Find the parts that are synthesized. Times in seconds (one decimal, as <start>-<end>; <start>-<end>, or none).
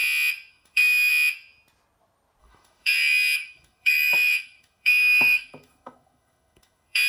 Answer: 0.5-1.1; 2.4-7.1